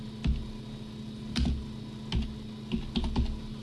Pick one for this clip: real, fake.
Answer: real